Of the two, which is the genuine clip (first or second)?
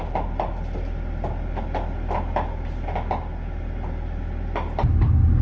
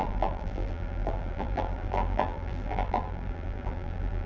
first